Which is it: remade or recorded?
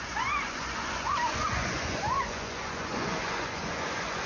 remade